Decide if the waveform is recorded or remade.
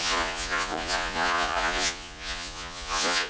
remade